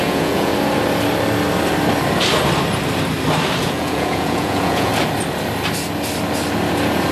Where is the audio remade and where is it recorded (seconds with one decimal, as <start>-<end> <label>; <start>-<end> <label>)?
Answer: 0.0-0.5 remade; 0.5-3.6 recorded; 3.6-4.9 remade; 4.9-7.1 recorded